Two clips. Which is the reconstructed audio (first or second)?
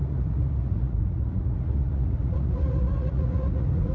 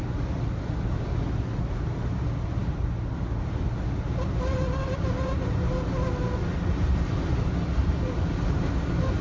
first